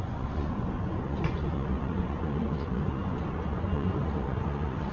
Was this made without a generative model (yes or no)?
no